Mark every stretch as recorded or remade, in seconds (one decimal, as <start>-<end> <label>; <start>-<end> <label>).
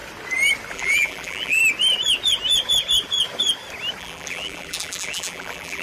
0.0-0.7 recorded; 0.7-1.6 remade; 1.6-4.0 recorded; 4.0-5.8 remade